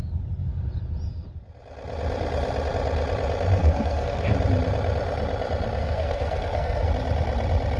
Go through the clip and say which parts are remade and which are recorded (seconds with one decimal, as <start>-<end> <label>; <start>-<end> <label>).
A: 0.0-3.6 recorded; 3.6-4.3 remade; 4.3-5.8 recorded; 5.8-6.9 remade; 6.9-7.8 recorded